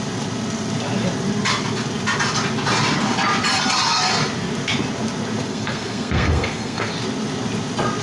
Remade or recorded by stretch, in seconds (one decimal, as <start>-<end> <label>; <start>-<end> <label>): 0.0-5.5 recorded; 5.5-6.9 remade; 6.9-8.0 recorded